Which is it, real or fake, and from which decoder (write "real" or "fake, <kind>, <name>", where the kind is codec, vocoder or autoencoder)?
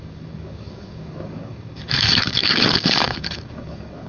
fake, codec, DAC